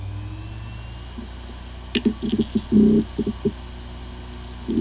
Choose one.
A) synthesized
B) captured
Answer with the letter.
B